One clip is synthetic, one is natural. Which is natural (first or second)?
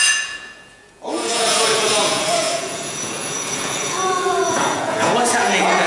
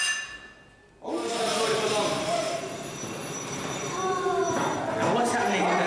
second